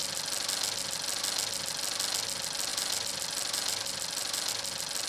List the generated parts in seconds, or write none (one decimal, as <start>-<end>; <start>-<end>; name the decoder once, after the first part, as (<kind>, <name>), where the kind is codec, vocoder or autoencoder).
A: 2.7-4.5 (vocoder, BigVGAN v2)